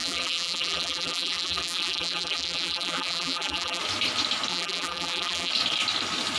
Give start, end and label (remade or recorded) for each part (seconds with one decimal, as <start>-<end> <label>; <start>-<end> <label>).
0.0-3.8 remade; 3.8-4.5 recorded; 4.5-5.5 remade; 5.5-6.4 recorded